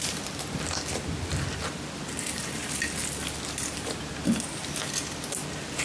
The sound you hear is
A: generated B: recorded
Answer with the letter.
B